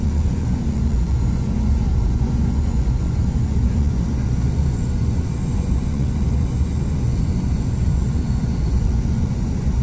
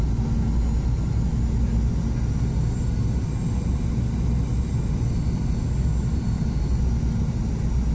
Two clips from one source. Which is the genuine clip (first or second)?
second